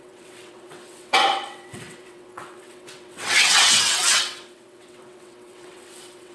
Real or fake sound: fake